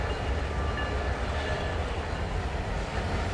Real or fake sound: real